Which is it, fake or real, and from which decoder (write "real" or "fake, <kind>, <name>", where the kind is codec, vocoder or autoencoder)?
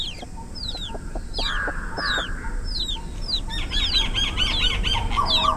real